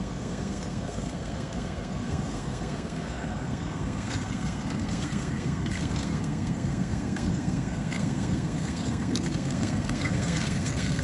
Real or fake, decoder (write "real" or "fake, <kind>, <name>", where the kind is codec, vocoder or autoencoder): fake, codec, SNAC